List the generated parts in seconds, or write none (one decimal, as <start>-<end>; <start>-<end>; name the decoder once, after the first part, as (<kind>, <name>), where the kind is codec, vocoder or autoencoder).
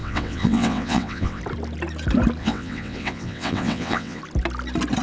0.0-1.4 (vocoder, WaveNeXt); 2.4-4.2